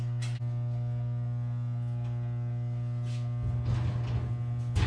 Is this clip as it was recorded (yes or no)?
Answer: yes